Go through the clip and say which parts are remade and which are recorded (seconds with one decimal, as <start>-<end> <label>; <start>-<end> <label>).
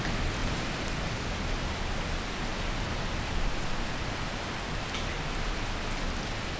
0.0-0.4 recorded; 0.4-1.2 remade; 1.2-6.6 recorded